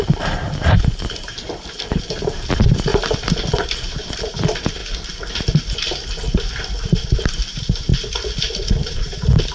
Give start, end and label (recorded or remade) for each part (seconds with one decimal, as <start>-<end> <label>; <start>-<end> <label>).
0.0-2.9 remade; 2.9-3.6 recorded; 3.6-4.8 remade; 4.8-6.8 recorded; 6.8-7.9 remade; 7.9-8.7 recorded; 8.7-9.5 remade